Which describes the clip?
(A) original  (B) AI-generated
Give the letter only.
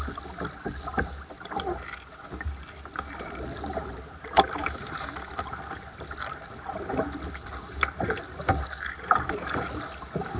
A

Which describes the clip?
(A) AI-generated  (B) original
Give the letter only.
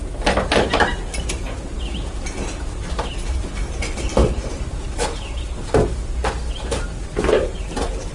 B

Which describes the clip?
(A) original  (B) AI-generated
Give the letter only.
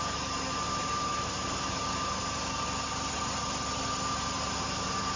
A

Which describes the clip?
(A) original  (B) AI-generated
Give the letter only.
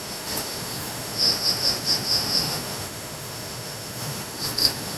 B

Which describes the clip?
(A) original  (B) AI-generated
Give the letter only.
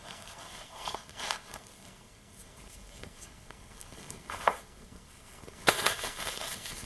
B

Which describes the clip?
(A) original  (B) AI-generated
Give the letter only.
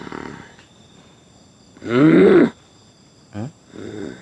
B